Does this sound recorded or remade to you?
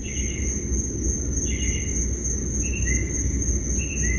recorded